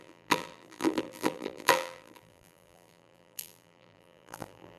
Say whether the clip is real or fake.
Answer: fake